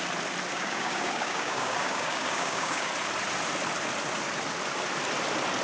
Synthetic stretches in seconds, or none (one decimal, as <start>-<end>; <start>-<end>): 0.5-2.9